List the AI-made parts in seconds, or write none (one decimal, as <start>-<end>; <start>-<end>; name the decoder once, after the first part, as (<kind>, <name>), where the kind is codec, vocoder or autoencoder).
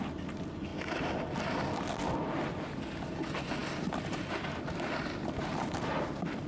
none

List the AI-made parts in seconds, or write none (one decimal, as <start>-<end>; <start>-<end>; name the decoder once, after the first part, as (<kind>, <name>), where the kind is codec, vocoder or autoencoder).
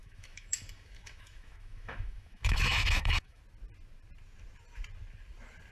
0.0-3.4 (autoencoder, DAC-VAE)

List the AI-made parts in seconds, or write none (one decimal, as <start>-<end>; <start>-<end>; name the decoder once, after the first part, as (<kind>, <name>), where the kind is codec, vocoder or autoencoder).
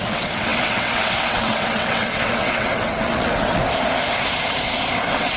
0.0-3.6 (vocoder, WaveNeXt); 5.0-5.4